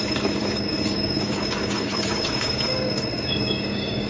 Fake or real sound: fake